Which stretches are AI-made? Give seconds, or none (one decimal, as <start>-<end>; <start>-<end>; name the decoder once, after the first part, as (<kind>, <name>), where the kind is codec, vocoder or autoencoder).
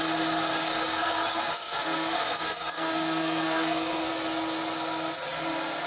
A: 0.6-4.1 (codec, SNAC)